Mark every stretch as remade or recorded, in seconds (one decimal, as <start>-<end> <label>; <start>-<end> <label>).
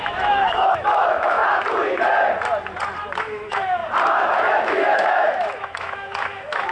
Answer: 0.0-1.4 remade; 1.4-3.2 recorded; 3.2-3.8 remade; 3.8-4.6 recorded; 4.6-6.7 remade